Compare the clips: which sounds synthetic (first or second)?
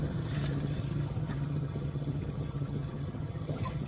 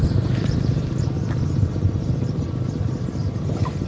first